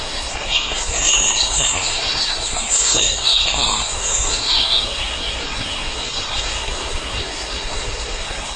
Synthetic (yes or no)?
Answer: yes